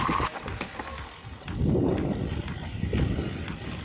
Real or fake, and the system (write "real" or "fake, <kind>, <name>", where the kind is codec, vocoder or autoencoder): real